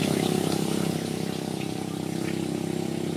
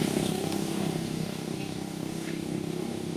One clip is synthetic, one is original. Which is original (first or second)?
first